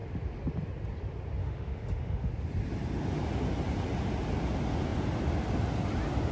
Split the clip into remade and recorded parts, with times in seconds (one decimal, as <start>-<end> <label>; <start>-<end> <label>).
0.0-1.4 recorded; 1.4-2.3 remade; 2.3-6.3 recorded